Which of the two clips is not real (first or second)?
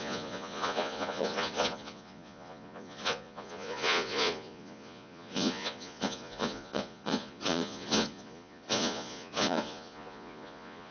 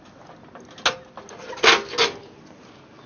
first